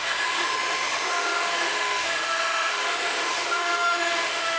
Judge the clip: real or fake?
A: fake